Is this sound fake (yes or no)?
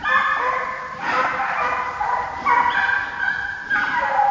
no